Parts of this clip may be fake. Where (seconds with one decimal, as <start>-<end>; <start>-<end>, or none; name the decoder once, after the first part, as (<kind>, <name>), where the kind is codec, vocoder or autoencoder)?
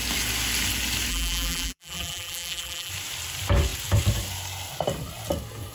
1.1-2.9 (vocoder, BigVGAN v2)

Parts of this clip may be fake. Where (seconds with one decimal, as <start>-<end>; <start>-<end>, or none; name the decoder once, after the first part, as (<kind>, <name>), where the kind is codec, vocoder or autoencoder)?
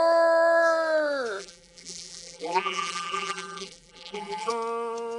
1.4-4.5 (vocoder, BigVGAN v2)